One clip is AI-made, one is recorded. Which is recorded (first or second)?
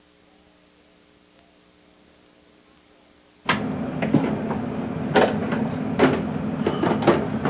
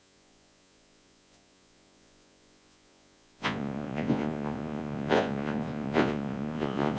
first